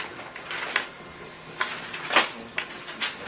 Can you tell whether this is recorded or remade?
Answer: recorded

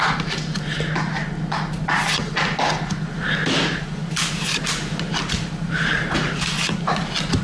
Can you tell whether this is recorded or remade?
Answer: recorded